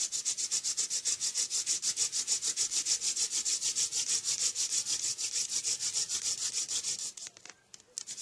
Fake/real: real